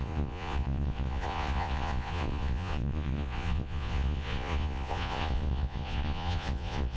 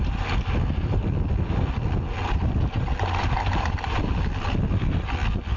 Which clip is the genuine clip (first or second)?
second